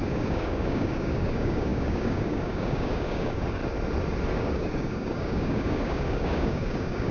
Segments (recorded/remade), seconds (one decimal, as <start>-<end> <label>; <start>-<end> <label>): 0.0-3.6 remade; 3.6-4.3 recorded; 4.3-7.1 remade